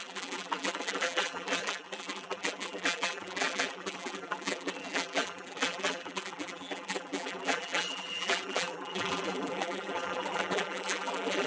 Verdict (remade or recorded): remade